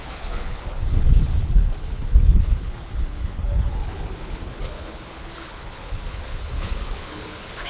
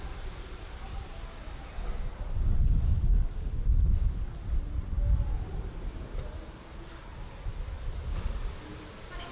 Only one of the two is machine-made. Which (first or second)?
first